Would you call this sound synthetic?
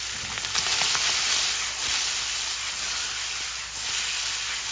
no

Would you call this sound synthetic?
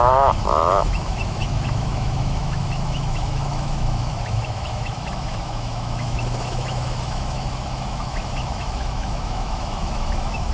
yes